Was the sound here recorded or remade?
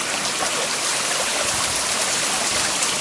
recorded